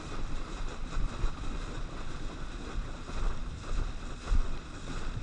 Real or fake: real